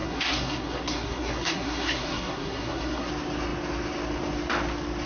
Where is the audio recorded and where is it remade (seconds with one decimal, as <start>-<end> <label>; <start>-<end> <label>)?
0.0-3.1 remade; 3.1-5.1 recorded